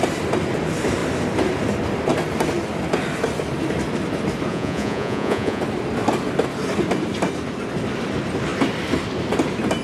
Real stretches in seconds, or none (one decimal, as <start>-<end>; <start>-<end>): 0.0-4.5; 5.6-9.8